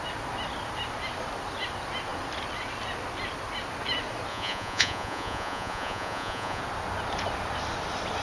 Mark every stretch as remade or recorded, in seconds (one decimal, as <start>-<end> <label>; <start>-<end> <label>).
0.0-4.3 recorded; 4.3-6.6 remade; 6.6-8.2 recorded